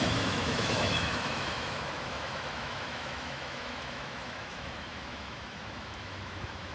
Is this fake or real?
fake